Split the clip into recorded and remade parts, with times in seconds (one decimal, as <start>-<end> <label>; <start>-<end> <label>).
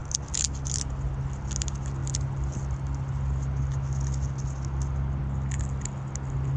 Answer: 0.0-6.6 recorded